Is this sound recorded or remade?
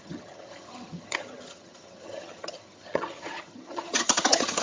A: remade